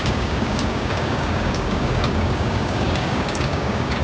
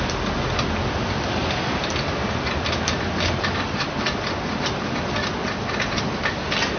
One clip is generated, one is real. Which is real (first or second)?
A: second